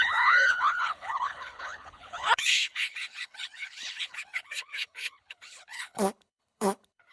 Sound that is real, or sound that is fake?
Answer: fake